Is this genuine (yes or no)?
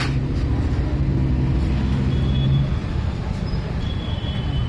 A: yes